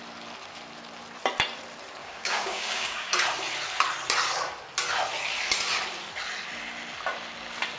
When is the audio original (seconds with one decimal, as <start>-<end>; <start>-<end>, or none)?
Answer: 0.0-2.0; 3.1-7.8